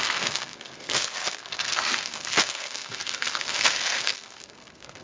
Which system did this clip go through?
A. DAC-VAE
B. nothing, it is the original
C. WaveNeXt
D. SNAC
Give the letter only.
D